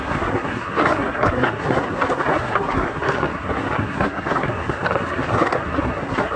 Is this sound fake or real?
fake